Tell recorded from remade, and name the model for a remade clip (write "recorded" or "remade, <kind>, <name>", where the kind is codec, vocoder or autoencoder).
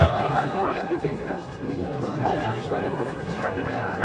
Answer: remade, codec, SNAC